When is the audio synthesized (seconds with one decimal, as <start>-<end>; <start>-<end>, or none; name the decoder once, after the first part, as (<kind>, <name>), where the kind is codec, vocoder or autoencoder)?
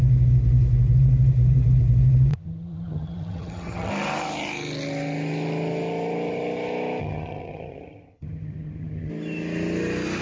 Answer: 2.3-3.9 (vocoder, HiFi-GAN); 7.0-9.1